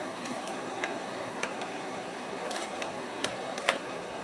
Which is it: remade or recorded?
remade